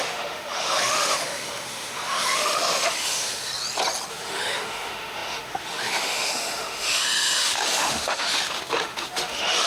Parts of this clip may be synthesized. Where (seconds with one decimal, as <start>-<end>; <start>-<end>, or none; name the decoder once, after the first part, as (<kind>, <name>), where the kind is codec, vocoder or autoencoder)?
0.0-3.5 (autoencoder, DAC-VAE); 4.1-9.7